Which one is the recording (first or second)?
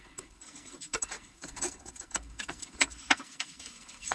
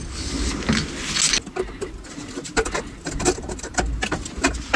second